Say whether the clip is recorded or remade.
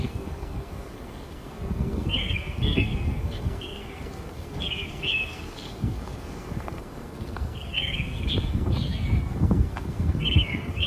remade